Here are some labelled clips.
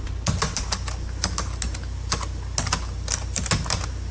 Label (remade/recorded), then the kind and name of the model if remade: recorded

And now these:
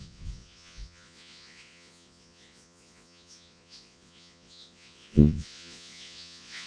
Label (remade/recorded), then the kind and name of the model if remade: remade, vocoder, Vocos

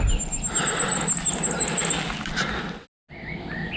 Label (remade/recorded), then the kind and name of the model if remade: recorded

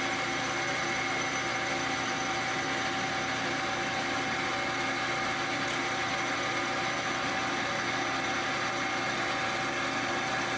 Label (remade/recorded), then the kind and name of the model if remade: recorded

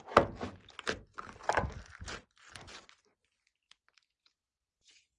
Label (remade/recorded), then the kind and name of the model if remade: recorded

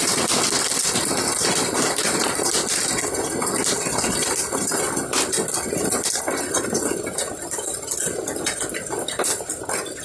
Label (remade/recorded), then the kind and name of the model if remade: recorded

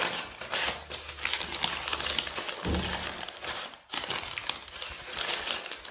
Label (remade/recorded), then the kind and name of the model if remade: recorded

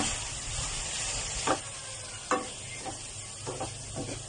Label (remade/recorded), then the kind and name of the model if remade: recorded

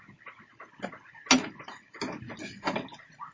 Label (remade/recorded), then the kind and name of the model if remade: recorded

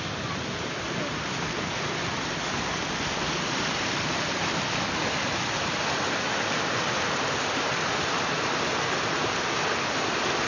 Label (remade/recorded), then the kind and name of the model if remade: recorded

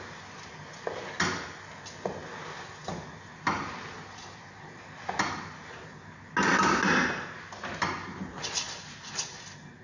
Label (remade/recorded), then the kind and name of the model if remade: recorded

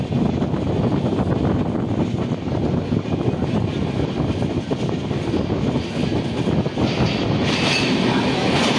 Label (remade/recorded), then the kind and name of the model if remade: recorded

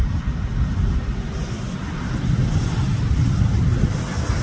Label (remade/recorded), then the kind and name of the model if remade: recorded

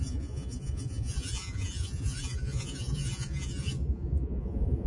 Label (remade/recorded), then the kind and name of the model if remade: remade, vocoder, Vocos